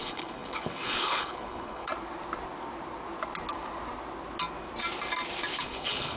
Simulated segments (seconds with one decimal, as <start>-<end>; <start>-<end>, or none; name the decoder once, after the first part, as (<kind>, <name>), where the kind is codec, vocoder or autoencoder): 0.0-1.9 (codec, HILCodec); 5.6-6.2